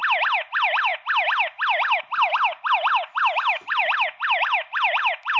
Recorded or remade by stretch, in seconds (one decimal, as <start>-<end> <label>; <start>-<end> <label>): 0.0-0.5 recorded; 0.5-0.9 remade; 0.9-2.7 recorded; 2.7-5.4 remade